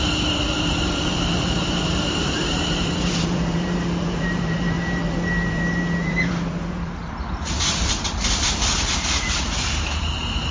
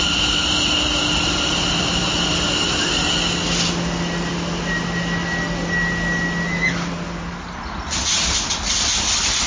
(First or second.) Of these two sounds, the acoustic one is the second